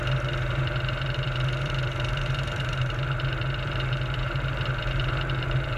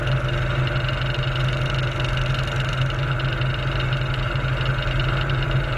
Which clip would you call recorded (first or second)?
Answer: second